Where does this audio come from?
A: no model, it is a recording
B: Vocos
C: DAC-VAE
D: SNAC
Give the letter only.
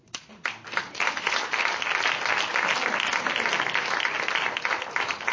A